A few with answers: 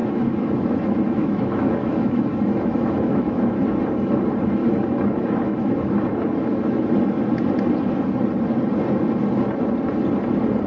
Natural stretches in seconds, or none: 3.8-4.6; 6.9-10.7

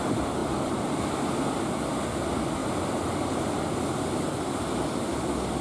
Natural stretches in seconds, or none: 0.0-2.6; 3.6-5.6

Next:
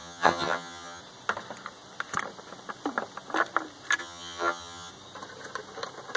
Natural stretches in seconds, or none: 1.0-4.0; 4.9-6.2

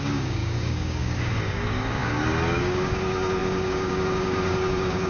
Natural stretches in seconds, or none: none

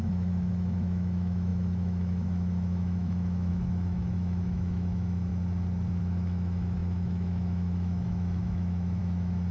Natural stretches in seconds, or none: 5.3-6.0

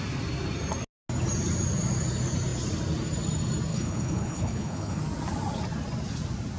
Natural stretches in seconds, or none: 0.0-3.7; 5.0-6.6